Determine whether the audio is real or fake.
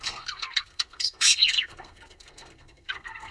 fake